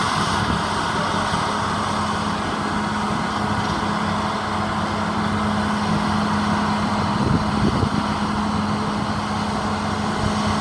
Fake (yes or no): no